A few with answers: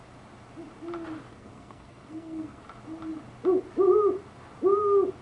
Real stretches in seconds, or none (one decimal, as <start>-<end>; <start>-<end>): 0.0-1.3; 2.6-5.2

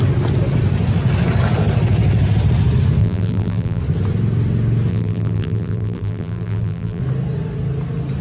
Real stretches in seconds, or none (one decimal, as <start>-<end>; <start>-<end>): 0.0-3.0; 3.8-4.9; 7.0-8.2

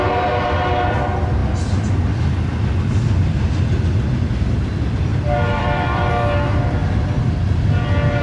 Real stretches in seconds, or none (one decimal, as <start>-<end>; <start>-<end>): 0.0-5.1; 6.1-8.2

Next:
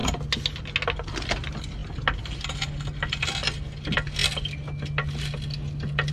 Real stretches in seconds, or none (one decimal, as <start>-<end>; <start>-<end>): 0.0-6.1

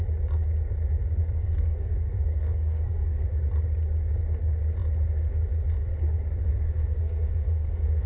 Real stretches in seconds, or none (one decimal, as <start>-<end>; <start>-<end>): 0.0-1.2; 3.2-6.5

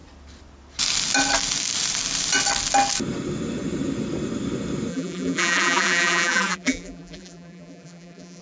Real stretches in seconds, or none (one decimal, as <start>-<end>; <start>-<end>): 0.0-4.9

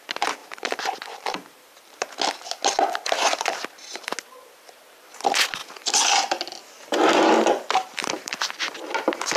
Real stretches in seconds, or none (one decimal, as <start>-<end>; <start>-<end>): 0.0-0.4; 2.1-8.0; 8.6-9.4

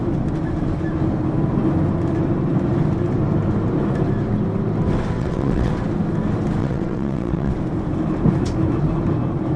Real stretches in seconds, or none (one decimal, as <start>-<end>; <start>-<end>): 0.0-5.2; 5.7-6.6; 7.5-9.6